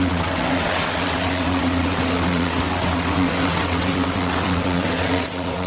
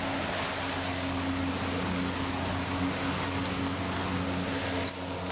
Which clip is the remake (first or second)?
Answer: first